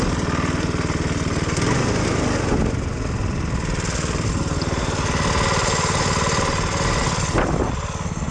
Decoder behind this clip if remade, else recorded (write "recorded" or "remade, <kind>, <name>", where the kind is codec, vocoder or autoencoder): recorded